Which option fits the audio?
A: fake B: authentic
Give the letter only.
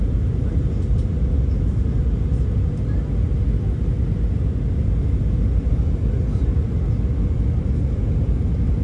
B